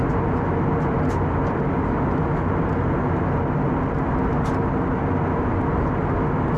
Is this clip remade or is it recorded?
recorded